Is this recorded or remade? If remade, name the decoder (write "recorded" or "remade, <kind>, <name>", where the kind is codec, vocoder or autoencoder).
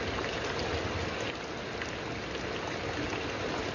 recorded